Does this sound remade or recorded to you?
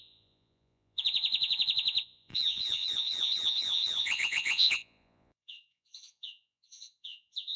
remade